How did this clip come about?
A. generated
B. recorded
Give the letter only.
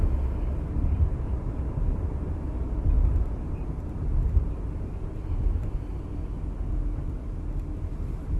B